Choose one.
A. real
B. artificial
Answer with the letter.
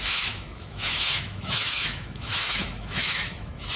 B